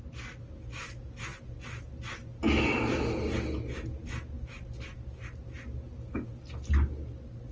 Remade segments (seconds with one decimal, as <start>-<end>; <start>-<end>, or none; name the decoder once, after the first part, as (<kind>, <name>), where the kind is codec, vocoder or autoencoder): none